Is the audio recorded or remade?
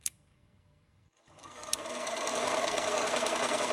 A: remade